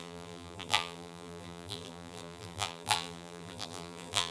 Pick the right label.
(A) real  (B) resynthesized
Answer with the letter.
B